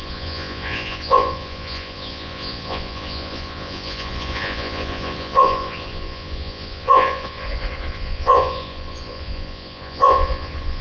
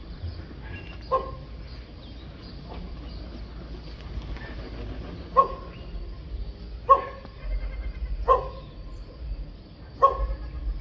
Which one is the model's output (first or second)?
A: first